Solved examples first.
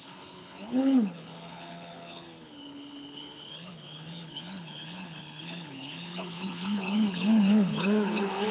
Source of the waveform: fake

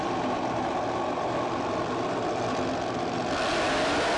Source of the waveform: real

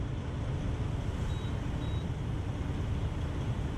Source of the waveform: real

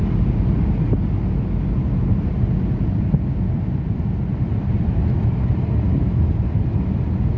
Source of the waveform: real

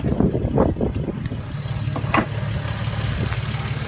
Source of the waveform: real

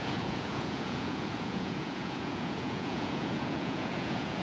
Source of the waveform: fake